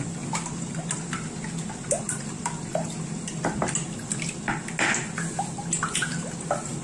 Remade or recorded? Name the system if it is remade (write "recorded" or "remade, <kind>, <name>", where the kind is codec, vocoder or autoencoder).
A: recorded